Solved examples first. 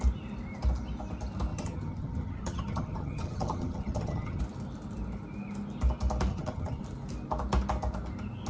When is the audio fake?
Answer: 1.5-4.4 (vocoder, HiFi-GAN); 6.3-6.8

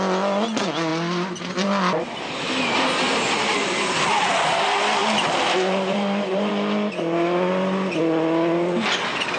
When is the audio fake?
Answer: 5.0-6.5 (vocoder, BigVGAN v2)

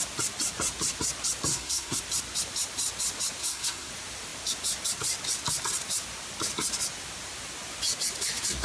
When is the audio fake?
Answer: 1.5-2.0 (codec, SNAC); 3.4-3.9

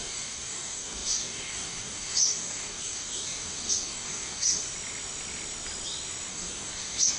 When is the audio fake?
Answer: 0.0-4.6 (codec, DAC); 6.3-7.2